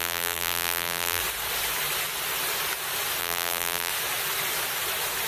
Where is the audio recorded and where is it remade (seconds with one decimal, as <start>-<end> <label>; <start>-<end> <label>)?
0.0-1.2 remade; 1.2-3.2 recorded; 3.2-3.9 remade; 3.9-5.3 recorded